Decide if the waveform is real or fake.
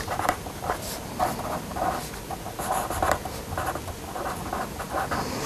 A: real